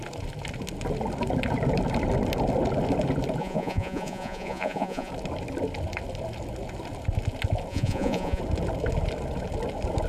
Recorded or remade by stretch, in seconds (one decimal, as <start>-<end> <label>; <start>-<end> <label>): 0.0-3.4 recorded; 3.4-5.1 remade; 5.1-7.7 recorded; 7.7-8.4 remade; 8.4-10.1 recorded